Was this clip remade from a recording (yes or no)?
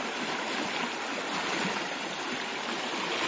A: no